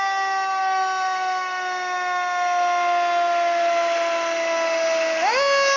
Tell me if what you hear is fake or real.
real